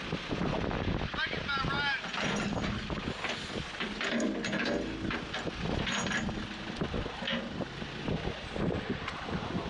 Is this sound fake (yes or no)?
no